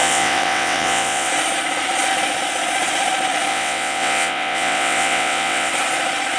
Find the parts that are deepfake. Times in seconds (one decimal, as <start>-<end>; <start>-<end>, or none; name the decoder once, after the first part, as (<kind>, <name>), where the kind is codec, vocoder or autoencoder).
0.0-1.3 (vocoder, WaveNeXt); 3.5-5.7